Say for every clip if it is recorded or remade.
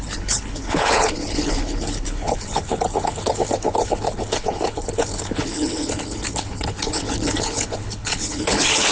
remade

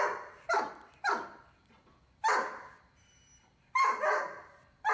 recorded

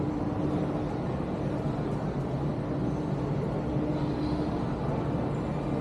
recorded